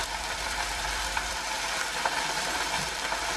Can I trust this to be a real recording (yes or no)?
no